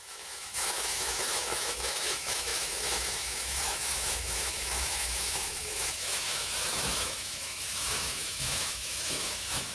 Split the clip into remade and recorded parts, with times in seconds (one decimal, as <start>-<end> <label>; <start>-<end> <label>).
0.0-9.7 remade